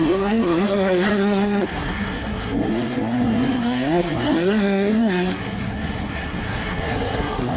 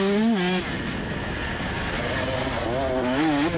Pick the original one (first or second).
second